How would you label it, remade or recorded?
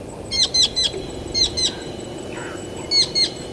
recorded